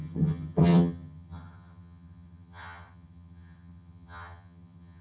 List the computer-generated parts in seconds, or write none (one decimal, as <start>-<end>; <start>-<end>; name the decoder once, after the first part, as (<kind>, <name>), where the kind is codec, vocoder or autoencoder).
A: 0.0-5.0 (vocoder, HiFi-GAN)